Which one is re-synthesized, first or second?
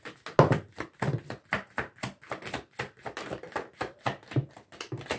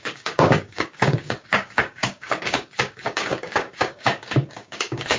second